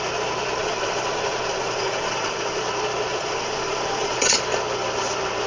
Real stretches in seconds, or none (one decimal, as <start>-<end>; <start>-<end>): 0.0-0.6; 2.6-3.1; 4.4-5.5